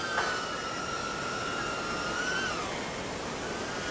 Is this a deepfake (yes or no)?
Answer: no